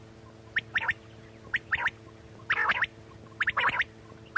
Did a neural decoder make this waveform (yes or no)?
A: no